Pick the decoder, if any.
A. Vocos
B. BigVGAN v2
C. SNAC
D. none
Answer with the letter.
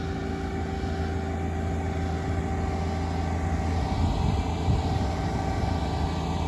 D